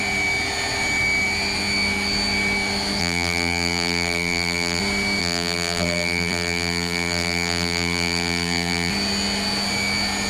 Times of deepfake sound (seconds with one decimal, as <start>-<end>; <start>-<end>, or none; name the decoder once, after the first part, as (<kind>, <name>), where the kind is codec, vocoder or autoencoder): 3.0-4.8 (vocoder, BigVGAN v2); 5.2-8.9